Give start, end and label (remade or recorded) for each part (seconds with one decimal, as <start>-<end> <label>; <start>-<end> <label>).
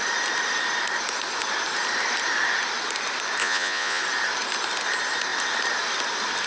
0.0-3.4 recorded; 3.4-4.0 remade; 4.0-6.5 recorded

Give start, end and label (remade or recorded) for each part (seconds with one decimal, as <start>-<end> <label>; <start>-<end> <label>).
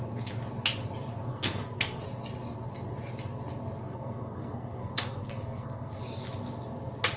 0.0-1.3 recorded; 1.3-2.0 remade; 2.0-3.8 recorded; 3.8-6.0 remade; 6.0-7.2 recorded